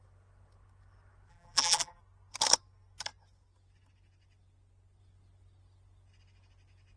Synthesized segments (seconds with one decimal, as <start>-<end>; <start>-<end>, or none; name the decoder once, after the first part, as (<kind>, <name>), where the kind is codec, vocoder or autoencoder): 1.3-2.0 (vocoder, BigVGAN v2)